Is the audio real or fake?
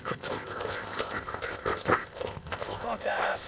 fake